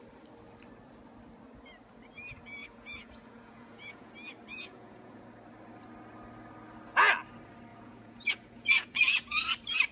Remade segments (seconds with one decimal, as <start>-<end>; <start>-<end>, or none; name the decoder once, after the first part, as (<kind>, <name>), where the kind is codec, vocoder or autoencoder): 2.6-4.1 (vocoder, Vocos); 4.5-5.2; 7.7-9.4